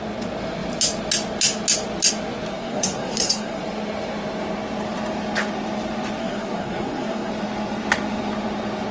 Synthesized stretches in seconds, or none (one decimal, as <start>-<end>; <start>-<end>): 2.5-3.6; 6.2-7.3